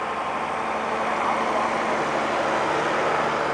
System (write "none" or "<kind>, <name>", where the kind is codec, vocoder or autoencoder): none